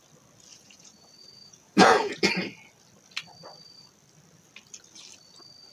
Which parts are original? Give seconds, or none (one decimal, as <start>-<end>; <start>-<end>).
0.0-0.5; 2.3-5.7